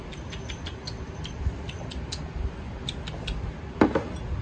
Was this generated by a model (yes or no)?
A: yes